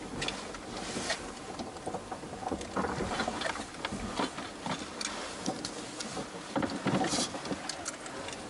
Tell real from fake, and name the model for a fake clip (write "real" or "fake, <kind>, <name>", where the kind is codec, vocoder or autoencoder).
real